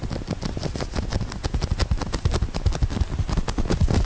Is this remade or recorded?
recorded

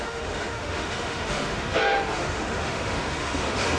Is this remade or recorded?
remade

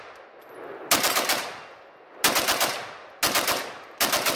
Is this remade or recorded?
recorded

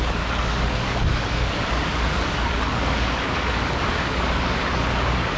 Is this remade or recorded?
remade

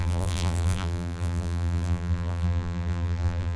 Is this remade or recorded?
remade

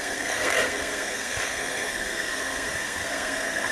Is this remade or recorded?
remade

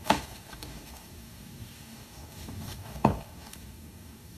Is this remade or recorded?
remade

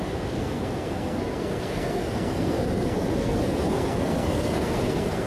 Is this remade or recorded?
remade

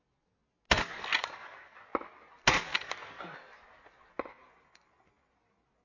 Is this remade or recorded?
recorded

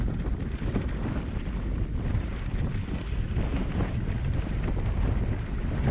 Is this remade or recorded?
recorded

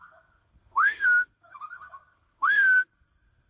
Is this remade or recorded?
remade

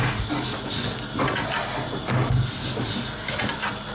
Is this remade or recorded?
recorded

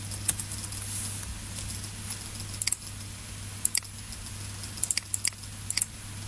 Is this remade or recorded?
recorded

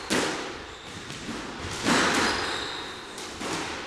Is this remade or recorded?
recorded